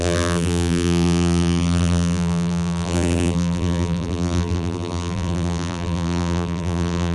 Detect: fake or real fake